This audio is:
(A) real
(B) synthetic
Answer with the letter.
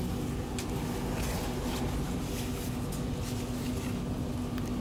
A